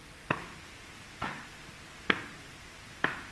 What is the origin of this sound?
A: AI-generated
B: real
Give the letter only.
B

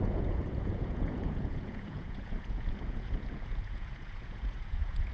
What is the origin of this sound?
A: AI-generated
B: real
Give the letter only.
A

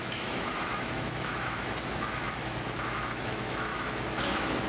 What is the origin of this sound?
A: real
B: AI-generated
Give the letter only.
B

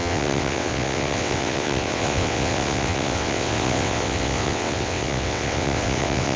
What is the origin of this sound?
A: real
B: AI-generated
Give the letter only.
B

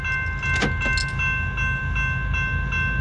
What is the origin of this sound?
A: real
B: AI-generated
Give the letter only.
A